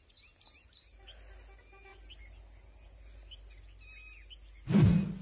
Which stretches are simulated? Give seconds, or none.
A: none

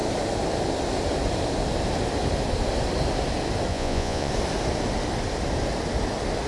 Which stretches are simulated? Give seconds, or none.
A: 3.7-4.3 (vocoder, Vocos)

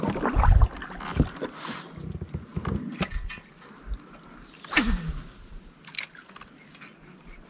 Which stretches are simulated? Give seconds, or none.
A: none

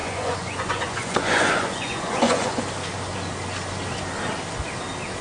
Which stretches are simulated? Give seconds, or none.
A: 0.0-2.6 (vocoder, Vocos)